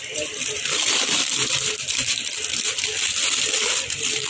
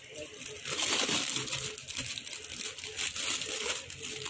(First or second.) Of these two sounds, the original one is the second